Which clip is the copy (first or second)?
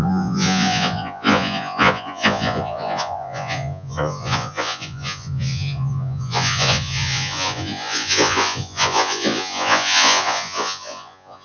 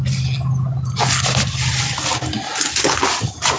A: first